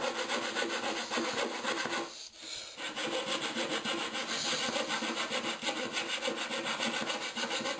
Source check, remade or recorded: recorded